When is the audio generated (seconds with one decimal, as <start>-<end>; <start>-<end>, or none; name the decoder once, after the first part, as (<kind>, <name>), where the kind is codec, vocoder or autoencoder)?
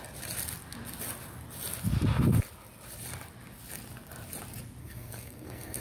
4.8-5.8 (codec, SNAC)